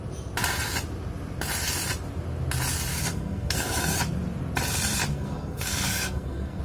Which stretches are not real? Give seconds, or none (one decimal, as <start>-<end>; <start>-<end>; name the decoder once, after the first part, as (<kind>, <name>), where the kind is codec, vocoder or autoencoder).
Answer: 2.9-4.0 (codec, SNAC); 5.1-6.6